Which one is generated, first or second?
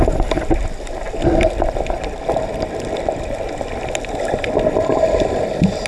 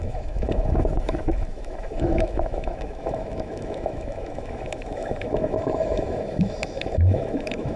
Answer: second